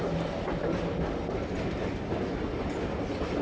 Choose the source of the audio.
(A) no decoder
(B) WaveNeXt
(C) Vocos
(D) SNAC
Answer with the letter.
A